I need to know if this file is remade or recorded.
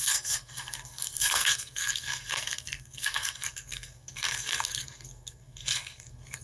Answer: remade